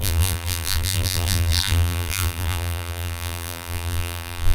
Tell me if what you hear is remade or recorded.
remade